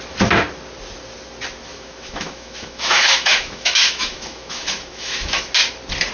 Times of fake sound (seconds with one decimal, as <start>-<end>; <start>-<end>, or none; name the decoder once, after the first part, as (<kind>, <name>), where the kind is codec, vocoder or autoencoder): 1.7-5.4 (autoencoder, DAC-VAE)